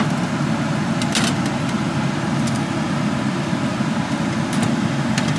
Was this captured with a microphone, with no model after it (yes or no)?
yes